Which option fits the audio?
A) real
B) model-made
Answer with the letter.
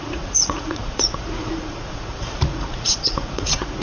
B